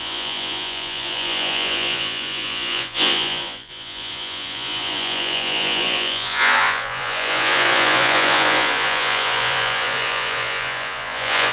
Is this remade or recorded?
remade